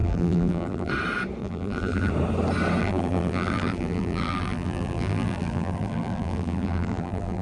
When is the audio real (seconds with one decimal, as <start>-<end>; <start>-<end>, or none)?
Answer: 0.9-1.4; 2.1-2.8